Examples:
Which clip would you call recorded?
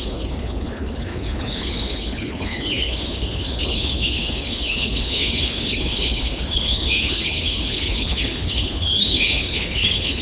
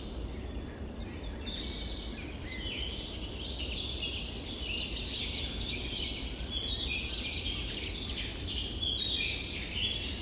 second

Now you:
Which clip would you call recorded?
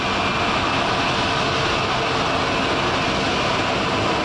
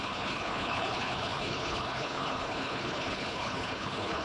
first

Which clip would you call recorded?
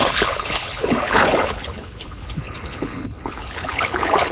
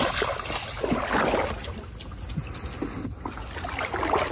second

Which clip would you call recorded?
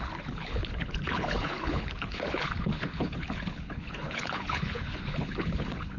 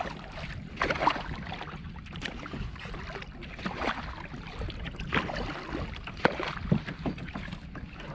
second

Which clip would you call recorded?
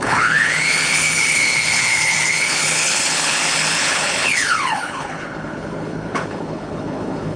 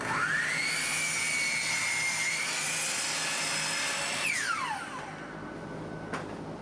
second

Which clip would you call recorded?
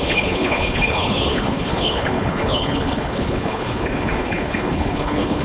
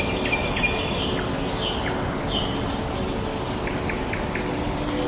second